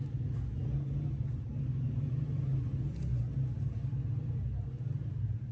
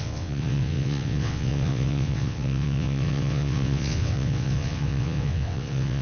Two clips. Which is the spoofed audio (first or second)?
second